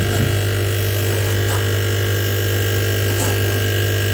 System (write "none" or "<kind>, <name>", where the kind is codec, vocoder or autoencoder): none